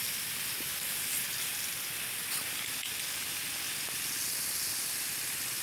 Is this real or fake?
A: real